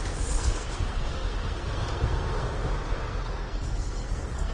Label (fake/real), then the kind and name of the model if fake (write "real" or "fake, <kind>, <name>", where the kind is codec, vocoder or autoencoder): fake, codec, SNAC